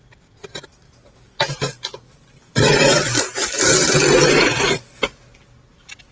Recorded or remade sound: recorded